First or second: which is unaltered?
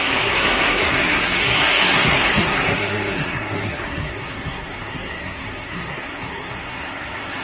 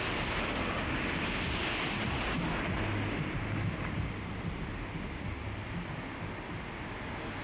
second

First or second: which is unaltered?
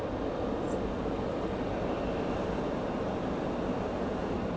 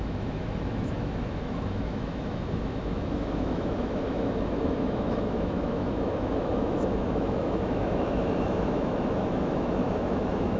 first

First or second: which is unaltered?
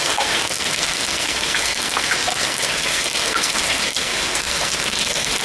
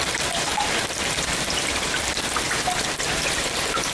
second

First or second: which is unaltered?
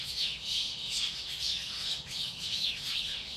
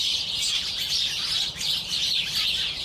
second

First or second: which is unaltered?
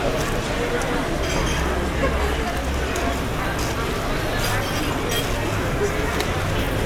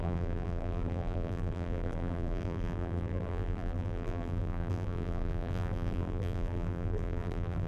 first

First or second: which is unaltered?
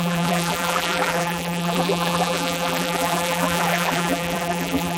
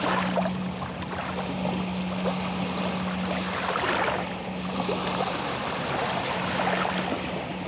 second